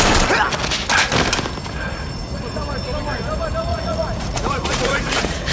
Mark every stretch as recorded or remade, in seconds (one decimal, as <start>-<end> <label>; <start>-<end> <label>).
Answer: 0.0-3.7 recorded; 3.7-5.5 remade